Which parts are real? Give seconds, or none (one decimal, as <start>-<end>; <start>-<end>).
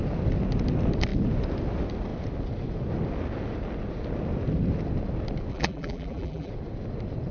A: 0.0-5.5; 6.5-7.3